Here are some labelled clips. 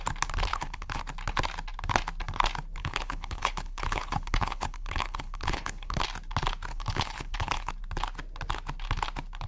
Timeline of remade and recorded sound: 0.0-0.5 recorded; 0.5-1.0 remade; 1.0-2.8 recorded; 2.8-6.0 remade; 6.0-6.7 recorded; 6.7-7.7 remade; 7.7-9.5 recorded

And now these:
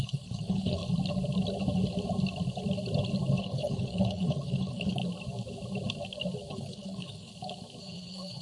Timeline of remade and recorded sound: 0.0-0.8 remade; 0.8-3.4 recorded; 3.4-5.0 remade; 5.0-6.5 recorded; 6.5-7.3 remade; 7.3-7.8 recorded; 7.8-8.4 remade